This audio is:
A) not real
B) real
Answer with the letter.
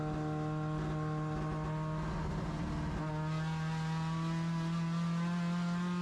B